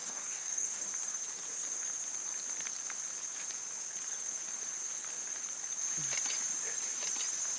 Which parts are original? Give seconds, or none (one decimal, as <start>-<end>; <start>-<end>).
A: 0.8-7.6